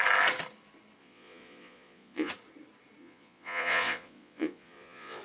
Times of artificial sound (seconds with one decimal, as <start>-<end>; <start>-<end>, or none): 1.0-2.3; 3.0-5.2